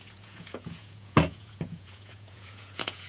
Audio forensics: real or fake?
fake